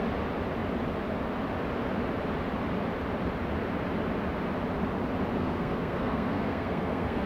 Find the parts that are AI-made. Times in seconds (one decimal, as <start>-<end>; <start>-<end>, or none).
5.4-7.3